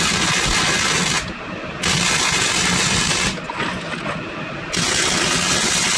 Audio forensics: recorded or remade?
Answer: recorded